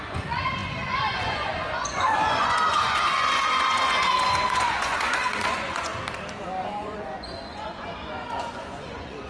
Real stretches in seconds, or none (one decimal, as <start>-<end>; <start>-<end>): 5.9-6.6